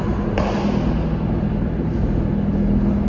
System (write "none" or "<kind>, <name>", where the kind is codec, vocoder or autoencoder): none